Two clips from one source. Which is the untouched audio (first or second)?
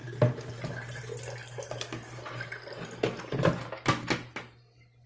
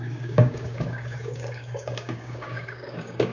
first